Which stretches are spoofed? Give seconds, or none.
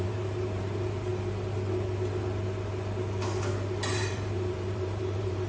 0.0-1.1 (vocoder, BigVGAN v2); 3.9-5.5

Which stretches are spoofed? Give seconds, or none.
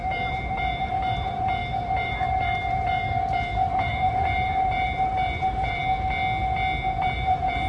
0.0-5.8 (vocoder, BigVGAN v2); 7.0-7.7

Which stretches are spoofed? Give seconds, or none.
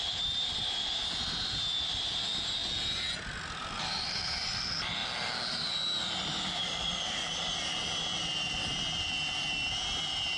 0.0-2.6 (vocoder, BigVGAN v2); 3.5-5.0; 6.2-10.4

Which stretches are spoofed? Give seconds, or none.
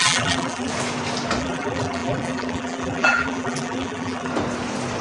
0.0-0.7 (vocoder, BigVGAN v2); 1.4-4.3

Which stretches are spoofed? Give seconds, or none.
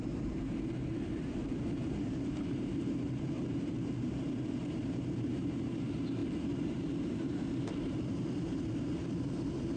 0.0-9.8 (vocoder, BigVGAN v2)